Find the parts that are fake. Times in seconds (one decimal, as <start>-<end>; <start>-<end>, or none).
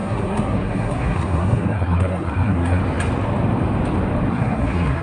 0.0-2.8; 4.3-5.0